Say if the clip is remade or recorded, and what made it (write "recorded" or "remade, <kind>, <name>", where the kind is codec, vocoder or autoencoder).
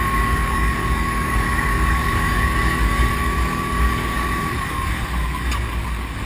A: remade, codec, DAC